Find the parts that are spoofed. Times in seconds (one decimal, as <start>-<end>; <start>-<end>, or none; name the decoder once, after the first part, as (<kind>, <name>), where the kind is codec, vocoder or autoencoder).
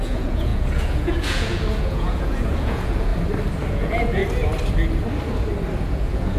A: 0.0-3.1 (vocoder, Vocos); 3.7-4.2; 5.8-6.4